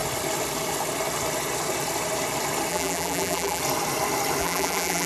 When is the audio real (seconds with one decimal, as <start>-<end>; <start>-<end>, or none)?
0.0-2.7; 3.6-4.4